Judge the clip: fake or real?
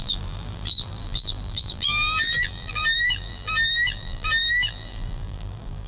fake